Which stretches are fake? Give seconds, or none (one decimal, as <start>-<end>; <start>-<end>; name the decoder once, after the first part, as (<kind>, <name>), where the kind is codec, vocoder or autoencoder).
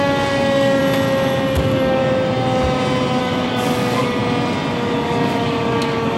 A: 0.0-0.8 (codec, DAC); 1.4-2.0; 3.2-4.2; 4.7-6.2